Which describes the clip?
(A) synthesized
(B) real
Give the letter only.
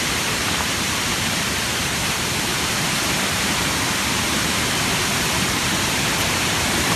A